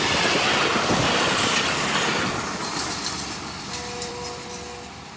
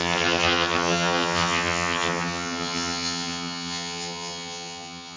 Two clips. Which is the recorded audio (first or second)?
first